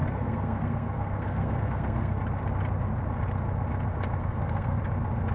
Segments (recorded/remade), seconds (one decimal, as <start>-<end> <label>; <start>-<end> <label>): 0.0-2.2 remade; 2.2-4.2 recorded; 4.2-4.8 remade; 4.8-5.3 recorded